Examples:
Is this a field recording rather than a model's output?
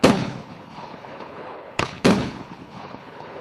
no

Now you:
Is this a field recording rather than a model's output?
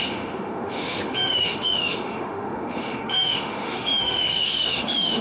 no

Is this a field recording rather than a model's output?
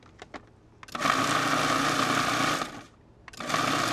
yes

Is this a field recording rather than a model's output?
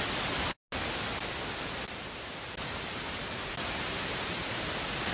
yes